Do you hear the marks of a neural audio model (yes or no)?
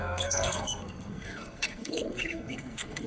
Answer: yes